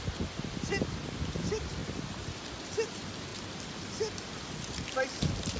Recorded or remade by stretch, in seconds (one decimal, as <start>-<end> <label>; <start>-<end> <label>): 0.0-5.6 recorded